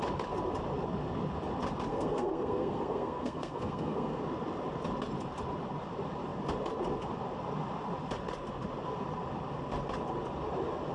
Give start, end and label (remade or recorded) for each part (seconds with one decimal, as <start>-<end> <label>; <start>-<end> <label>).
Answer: 0.0-1.9 recorded; 1.9-4.2 remade; 4.2-10.9 recorded